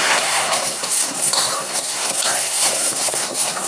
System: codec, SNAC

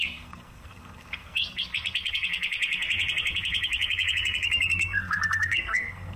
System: codec, SNAC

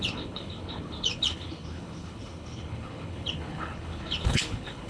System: codec, HILCodec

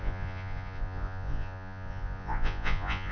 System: vocoder, Vocos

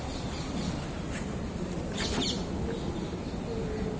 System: none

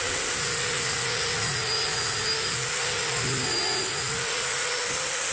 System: none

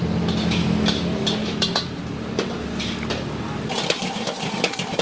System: none